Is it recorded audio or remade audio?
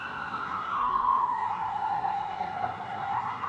remade